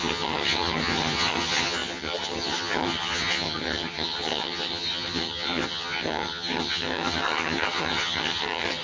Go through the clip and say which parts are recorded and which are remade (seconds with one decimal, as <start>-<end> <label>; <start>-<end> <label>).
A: 0.0-8.8 remade